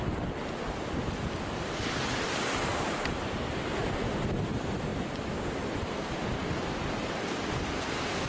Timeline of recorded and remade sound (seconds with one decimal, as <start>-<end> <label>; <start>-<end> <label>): 0.0-2.7 recorded; 2.7-3.6 remade; 3.6-8.3 recorded